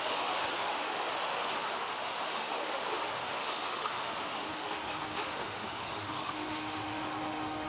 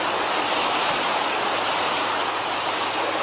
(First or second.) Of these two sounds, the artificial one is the first